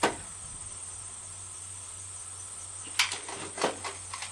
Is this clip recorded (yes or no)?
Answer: yes